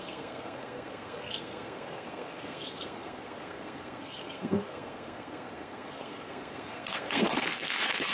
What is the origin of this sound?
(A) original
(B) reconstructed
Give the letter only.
B